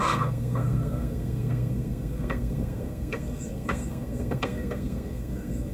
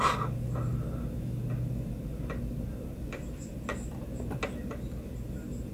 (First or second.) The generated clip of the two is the first